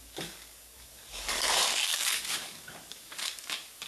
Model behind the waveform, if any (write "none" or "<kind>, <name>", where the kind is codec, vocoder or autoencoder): codec, DAC